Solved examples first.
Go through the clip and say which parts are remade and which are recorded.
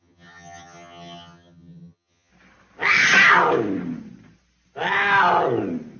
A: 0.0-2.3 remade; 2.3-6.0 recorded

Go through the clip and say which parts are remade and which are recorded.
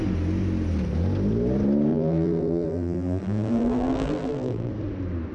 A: 0.0-1.9 recorded; 1.9-4.7 remade; 4.7-5.3 recorded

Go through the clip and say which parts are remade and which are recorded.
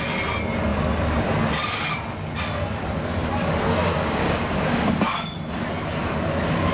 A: 0.0-3.8 recorded; 3.8-5.4 remade; 5.4-6.7 recorded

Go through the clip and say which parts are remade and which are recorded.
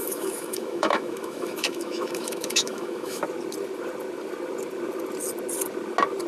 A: 0.0-3.2 remade; 3.2-6.3 recorded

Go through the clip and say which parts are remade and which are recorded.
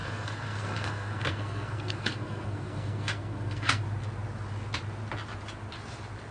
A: 0.0-3.8 remade; 3.8-6.3 recorded